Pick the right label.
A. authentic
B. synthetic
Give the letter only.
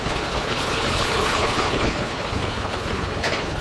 B